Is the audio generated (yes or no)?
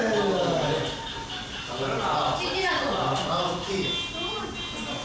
no